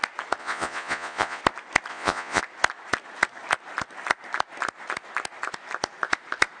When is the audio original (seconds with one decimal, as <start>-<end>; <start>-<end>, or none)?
0.0-0.4; 1.4-1.9; 2.4-6.6